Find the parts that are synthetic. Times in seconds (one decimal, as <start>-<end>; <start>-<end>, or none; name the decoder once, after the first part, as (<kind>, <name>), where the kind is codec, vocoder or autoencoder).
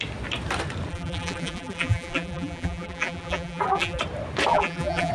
0.9-4.0 (vocoder, BigVGAN v2); 4.5-5.1